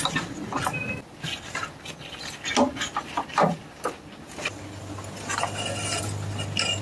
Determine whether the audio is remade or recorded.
recorded